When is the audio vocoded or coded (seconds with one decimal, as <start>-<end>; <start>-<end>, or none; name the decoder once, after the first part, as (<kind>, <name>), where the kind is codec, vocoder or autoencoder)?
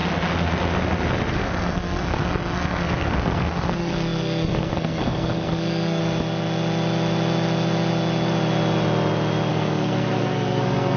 1.3-6.0 (codec, SNAC); 9.5-11.0